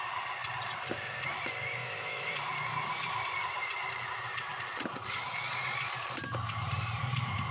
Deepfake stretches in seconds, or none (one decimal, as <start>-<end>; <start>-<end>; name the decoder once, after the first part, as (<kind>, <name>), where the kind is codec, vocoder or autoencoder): 1.8-2.3 (autoencoder, DAC-VAE)